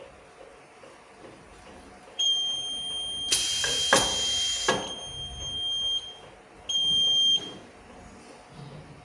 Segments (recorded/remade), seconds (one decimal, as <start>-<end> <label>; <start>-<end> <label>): 0.0-0.5 recorded; 0.5-3.2 remade; 3.2-6.8 recorded; 6.8-8.1 remade; 8.1-9.0 recorded